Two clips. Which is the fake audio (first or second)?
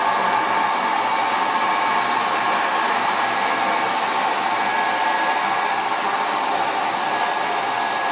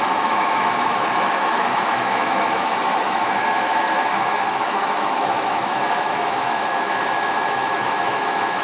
second